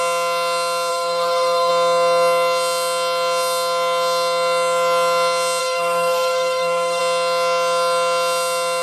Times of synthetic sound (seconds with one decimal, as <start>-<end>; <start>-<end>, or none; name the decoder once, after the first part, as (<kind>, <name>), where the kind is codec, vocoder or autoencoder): 0.9-1.7 (codec, SNAC); 5.6-7.0